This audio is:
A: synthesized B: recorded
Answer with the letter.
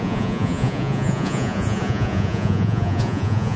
A